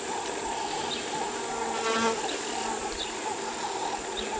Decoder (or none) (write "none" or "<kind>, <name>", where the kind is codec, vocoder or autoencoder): none